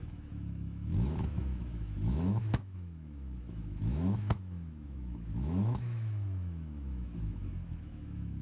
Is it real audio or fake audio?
fake